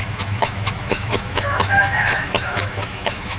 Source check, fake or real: fake